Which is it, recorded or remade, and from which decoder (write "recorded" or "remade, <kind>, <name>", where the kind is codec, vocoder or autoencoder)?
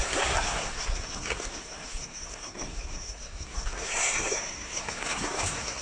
remade, codec, SNAC